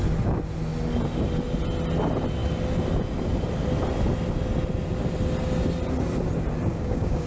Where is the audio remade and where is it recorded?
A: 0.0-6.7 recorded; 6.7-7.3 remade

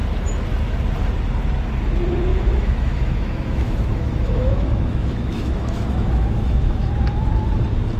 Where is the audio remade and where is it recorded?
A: 0.0-2.3 recorded; 2.3-6.8 remade; 6.8-8.0 recorded

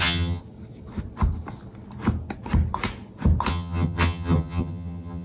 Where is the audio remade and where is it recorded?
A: 0.0-0.4 remade; 0.4-3.5 recorded; 3.5-5.2 remade

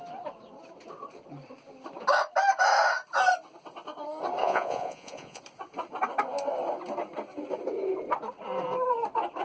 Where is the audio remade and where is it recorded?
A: 0.0-4.4 recorded; 4.4-5.4 remade; 5.4-9.4 recorded

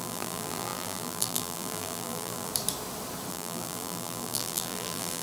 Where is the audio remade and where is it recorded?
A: 0.0-2.5 remade; 2.5-3.3 recorded; 3.3-5.2 remade